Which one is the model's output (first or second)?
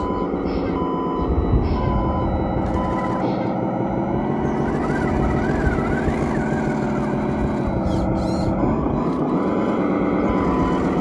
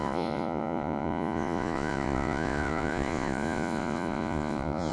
second